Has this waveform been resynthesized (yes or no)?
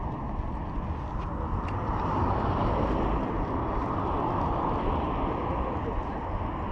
no